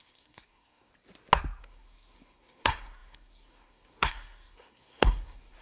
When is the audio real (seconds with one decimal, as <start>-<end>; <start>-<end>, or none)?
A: 0.9-1.6